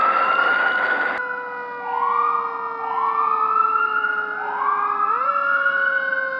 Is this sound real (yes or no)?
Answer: yes